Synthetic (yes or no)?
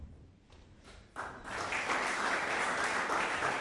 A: yes